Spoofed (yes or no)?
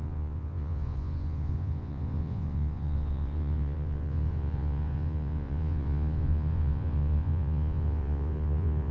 yes